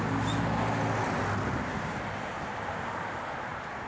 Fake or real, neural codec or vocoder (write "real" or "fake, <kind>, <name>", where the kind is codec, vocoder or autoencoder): real